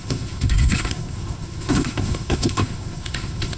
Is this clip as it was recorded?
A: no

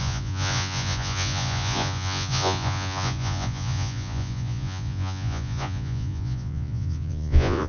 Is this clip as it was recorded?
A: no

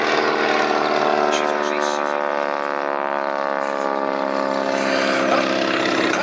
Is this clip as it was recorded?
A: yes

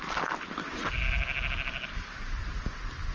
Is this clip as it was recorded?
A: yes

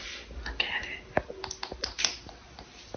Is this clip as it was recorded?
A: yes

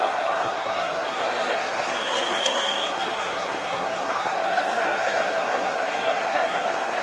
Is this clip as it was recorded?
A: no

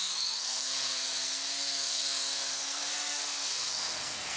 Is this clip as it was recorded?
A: no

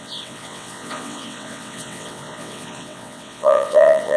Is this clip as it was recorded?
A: no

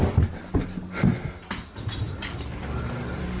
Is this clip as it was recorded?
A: yes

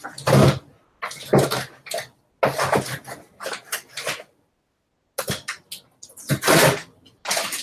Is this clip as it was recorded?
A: yes